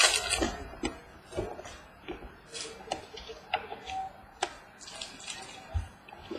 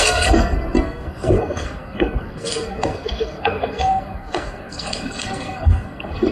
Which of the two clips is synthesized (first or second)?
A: second